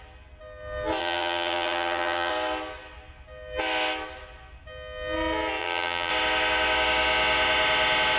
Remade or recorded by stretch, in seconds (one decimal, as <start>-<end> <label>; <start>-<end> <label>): 0.0-1.0 recorded; 1.0-2.3 remade; 2.3-5.6 recorded; 5.6-6.1 remade; 6.1-8.2 recorded